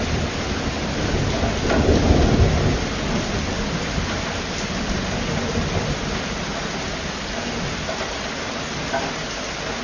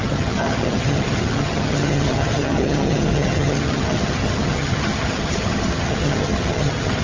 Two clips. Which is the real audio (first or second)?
first